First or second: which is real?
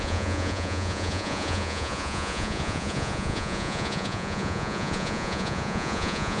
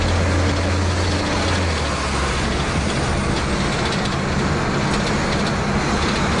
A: second